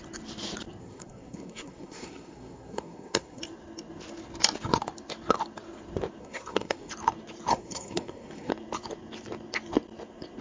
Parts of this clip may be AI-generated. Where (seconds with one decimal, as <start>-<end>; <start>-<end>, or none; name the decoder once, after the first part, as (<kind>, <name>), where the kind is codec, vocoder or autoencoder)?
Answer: 0.8-3.4 (codec, SNAC); 6.2-6.9; 7.5-8.5